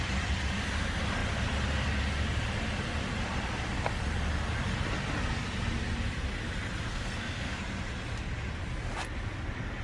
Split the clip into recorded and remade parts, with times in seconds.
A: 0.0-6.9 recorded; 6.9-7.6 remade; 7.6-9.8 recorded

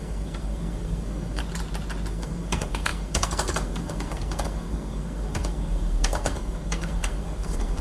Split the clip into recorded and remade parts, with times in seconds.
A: 0.0-1.4 remade; 1.4-2.1 recorded; 2.1-7.8 remade

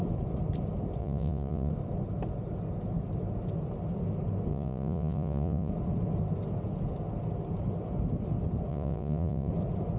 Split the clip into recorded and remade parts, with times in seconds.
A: 0.0-1.0 recorded; 1.0-1.7 remade; 1.7-4.5 recorded; 4.5-5.7 remade; 5.7-8.7 recorded; 8.7-9.5 remade; 9.5-10.0 recorded

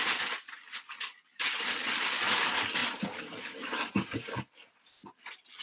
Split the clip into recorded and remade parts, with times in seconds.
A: 0.0-5.6 recorded

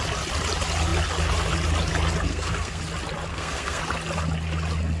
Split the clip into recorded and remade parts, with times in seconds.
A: 0.0-2.3 recorded; 2.3-2.8 remade; 2.8-3.3 recorded; 3.3-3.8 remade; 3.8-5.0 recorded

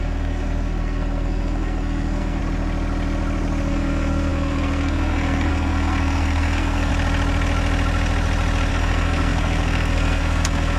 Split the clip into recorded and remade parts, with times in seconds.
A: 0.0-2.4 remade; 2.4-3.7 recorded; 3.7-6.9 remade; 6.9-8.7 recorded; 8.7-10.8 remade

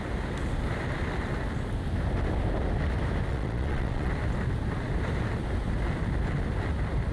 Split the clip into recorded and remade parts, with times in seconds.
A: 0.0-3.3 recorded; 3.3-4.1 remade; 4.1-7.1 recorded